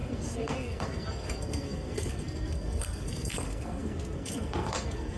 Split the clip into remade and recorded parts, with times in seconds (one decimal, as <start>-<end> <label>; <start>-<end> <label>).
0.0-5.2 remade